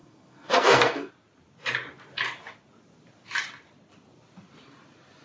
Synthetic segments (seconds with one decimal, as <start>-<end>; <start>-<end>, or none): 0.0-1.1